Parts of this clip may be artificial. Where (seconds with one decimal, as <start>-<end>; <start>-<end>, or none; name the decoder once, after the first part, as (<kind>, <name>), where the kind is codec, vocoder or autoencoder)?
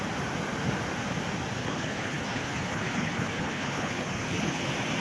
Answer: 1.6-4.6 (codec, HILCodec)